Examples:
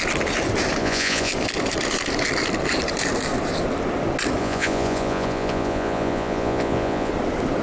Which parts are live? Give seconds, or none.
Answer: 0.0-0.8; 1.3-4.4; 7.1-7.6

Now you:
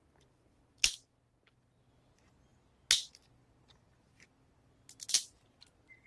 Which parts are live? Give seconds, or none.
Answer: 0.0-6.1

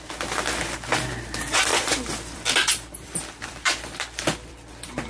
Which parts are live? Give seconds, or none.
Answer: 0.0-1.7

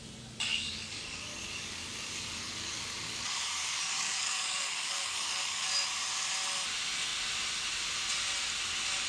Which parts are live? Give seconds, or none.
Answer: 0.0-0.5; 5.7-9.1

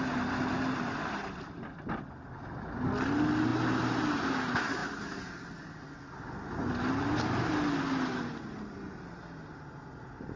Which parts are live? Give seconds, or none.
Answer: 0.0-10.4

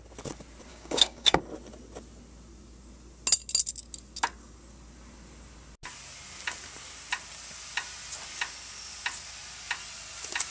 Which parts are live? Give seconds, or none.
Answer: 0.0-0.7; 1.4-10.5